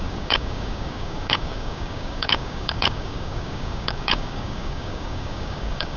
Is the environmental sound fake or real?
fake